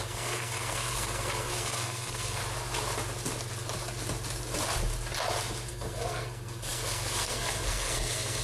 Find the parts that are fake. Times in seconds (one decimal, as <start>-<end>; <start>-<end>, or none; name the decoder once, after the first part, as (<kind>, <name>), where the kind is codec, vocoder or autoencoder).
0.0-2.4 (codec, SNAC); 5.7-8.4